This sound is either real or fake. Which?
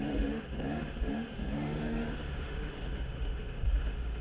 fake